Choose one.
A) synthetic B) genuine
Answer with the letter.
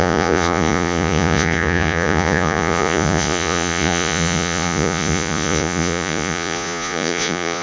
A